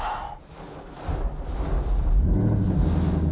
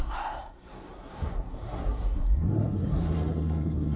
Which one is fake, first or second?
second